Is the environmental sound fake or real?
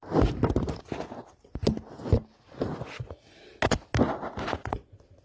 real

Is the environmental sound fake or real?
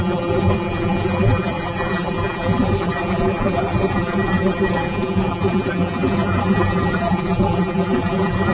fake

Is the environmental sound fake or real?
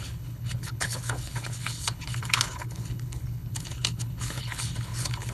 fake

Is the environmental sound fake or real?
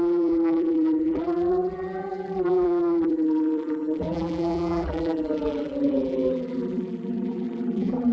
fake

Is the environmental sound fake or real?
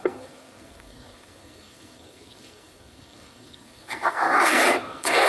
fake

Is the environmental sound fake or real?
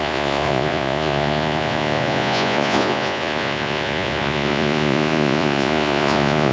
fake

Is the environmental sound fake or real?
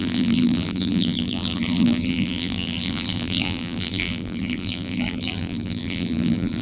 fake